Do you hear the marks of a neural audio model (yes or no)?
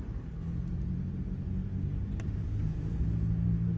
no